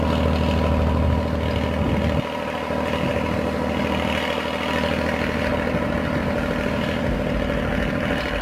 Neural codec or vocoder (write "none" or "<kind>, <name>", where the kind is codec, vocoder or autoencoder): none